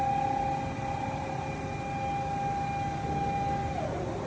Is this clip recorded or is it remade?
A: recorded